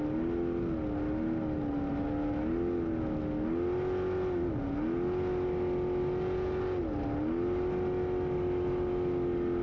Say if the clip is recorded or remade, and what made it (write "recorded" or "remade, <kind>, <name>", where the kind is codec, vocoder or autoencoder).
recorded